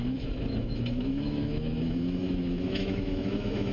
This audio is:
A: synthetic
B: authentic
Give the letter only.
A